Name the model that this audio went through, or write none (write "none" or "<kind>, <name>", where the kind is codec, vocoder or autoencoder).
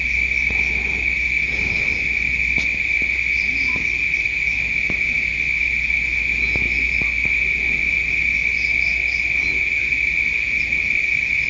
none